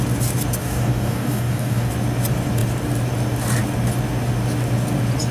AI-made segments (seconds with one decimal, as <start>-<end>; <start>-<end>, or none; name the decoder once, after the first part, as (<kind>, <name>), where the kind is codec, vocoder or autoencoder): 0.6-1.9 (codec, DAC)